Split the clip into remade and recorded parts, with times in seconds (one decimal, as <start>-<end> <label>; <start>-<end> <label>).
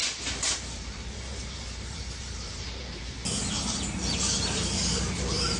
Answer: 0.0-3.2 remade; 3.2-5.0 recorded; 5.0-5.6 remade